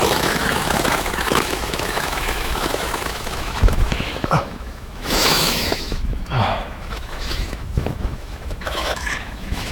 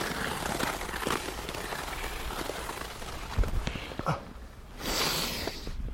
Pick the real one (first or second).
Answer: second